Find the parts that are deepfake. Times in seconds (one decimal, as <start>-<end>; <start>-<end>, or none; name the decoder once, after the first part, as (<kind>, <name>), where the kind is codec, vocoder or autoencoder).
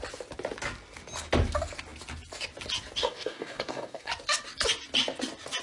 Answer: 3.0-4.1 (codec, DAC)